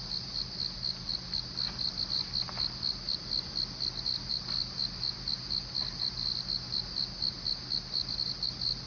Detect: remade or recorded recorded